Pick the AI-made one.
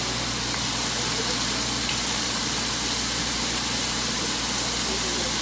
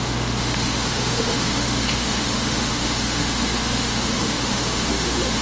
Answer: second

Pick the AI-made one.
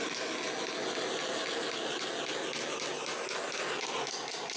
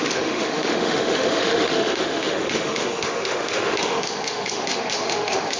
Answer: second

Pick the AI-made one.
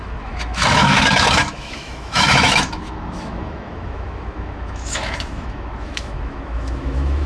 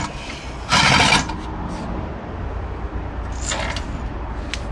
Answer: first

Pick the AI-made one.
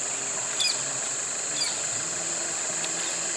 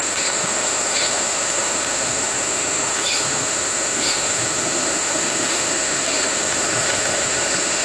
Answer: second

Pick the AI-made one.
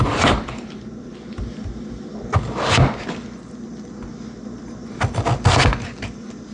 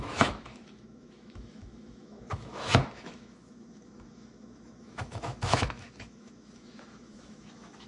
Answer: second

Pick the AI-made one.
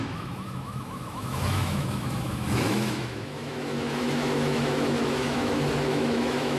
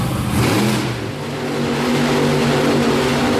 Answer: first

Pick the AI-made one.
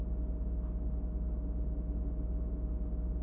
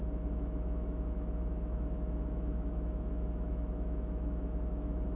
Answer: second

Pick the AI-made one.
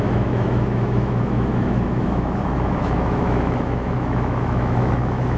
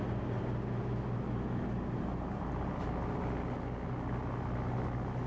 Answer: first